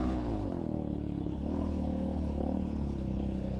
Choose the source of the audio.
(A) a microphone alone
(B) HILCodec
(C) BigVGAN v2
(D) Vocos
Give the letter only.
B